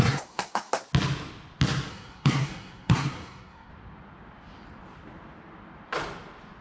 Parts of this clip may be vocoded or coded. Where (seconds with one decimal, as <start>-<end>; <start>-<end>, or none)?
0.0-0.7; 1.9-3.7

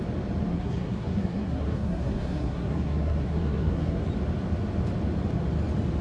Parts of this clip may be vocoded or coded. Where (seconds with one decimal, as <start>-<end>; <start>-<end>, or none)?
0.5-4.1

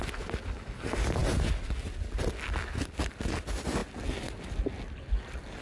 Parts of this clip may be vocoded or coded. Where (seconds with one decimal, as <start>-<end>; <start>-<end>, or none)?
none

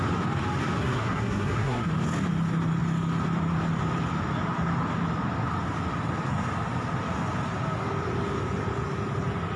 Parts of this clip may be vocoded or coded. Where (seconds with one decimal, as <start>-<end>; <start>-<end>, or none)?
0.8-1.9